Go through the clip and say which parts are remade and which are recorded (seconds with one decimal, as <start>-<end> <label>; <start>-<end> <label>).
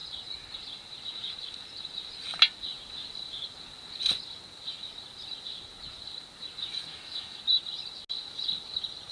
0.0-6.9 recorded; 6.9-7.4 remade; 7.4-9.1 recorded